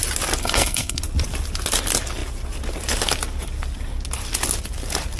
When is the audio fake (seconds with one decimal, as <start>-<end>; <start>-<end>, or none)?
0.4-1.0